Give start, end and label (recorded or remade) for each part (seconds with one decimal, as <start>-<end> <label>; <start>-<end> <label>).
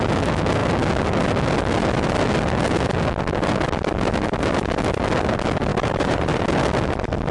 0.0-5.7 recorded; 5.7-6.4 remade; 6.4-7.3 recorded